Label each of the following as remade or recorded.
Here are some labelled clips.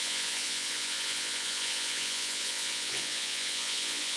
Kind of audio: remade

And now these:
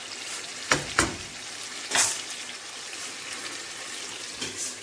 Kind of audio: recorded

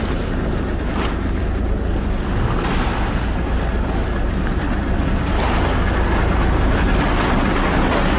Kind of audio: recorded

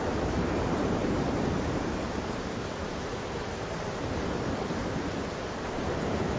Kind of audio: remade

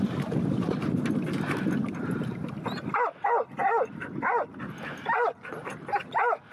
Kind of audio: recorded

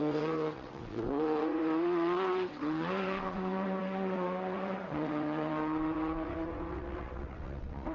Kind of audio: remade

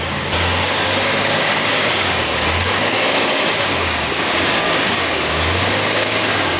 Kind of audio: remade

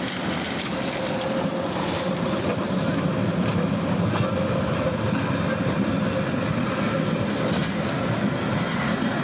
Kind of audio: recorded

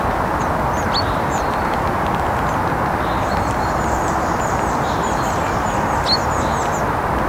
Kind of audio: recorded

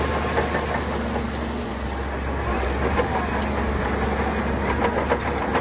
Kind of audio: recorded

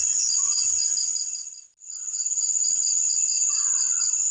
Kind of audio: recorded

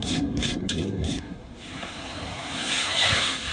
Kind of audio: remade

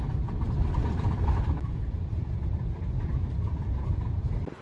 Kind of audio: remade